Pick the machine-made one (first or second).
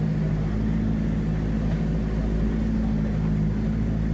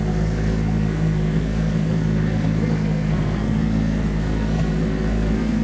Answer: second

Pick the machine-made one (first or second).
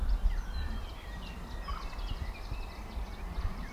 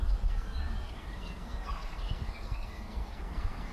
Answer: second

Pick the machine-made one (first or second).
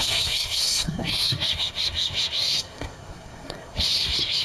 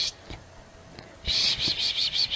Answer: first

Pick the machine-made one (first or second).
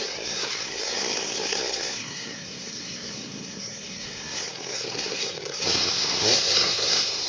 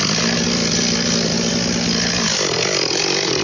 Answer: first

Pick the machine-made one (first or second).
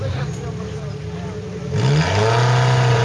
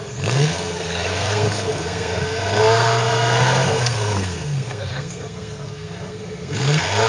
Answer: second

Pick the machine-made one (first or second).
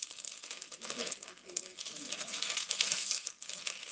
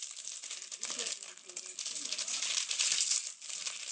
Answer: first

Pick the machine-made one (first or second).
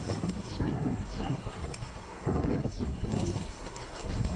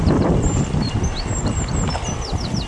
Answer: first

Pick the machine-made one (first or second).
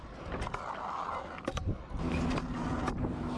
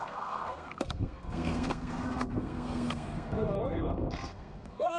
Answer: second